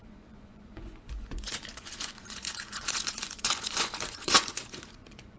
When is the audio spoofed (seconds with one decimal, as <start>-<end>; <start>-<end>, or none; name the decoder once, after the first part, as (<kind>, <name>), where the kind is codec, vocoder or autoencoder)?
0.0-5.4 (vocoder, Vocos)